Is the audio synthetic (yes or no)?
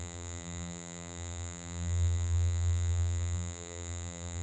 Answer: yes